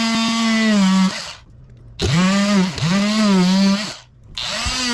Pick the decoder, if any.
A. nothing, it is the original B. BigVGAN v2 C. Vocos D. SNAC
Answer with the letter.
A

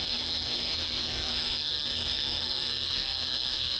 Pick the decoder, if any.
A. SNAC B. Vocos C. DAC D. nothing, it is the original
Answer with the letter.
A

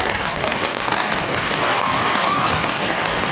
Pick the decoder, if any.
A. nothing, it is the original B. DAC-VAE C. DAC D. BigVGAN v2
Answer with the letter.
C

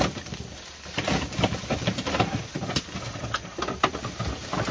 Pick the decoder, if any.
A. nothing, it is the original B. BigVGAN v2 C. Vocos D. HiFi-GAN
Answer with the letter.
A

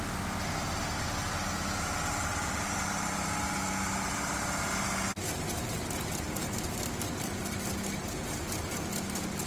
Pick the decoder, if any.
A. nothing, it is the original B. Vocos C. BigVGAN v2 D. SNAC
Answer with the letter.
A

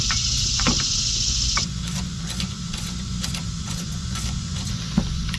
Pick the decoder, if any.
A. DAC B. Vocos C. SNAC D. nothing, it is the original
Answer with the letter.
B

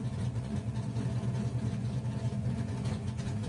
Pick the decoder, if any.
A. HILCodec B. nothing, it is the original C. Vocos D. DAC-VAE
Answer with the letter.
C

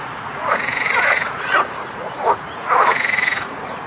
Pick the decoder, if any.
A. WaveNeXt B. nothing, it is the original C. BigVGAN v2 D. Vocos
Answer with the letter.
D